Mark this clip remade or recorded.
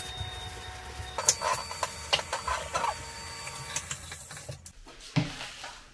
recorded